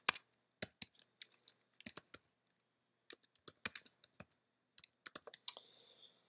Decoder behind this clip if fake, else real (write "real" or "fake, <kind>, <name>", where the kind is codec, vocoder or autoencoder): real